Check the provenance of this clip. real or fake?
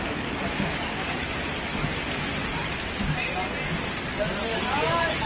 real